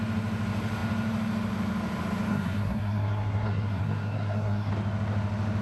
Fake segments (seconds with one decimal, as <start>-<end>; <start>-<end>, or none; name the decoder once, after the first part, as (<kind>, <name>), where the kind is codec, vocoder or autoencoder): 2.3-4.7 (codec, SNAC)